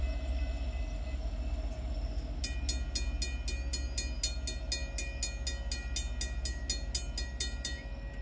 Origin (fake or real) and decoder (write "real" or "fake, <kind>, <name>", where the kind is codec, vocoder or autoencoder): real